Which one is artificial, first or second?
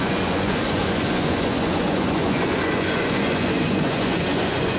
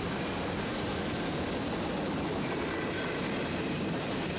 first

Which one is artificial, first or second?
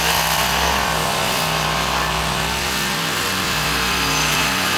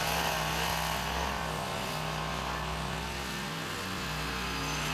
first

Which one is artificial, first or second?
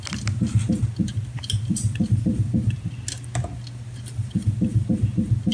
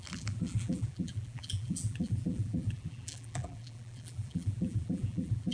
second